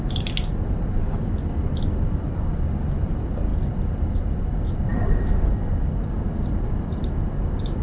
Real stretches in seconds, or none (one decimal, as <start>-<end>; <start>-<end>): 0.0-7.8